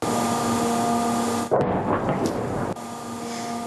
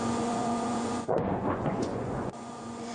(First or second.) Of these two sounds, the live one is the first